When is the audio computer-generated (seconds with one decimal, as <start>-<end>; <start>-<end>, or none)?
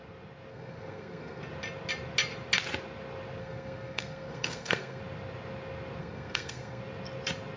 0.5-1.4; 3.4-5.0; 6.0-6.8